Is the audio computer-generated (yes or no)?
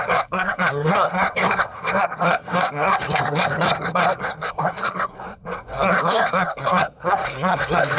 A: yes